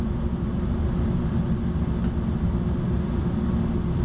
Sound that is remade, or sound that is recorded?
recorded